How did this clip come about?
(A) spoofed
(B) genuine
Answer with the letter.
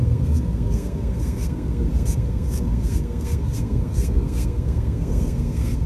A